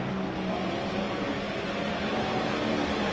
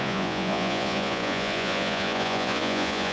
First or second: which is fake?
second